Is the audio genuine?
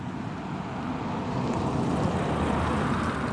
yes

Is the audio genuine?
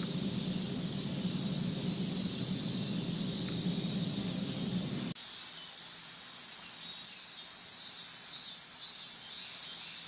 yes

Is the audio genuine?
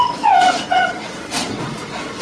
no